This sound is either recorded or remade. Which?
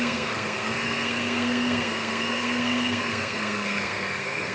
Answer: remade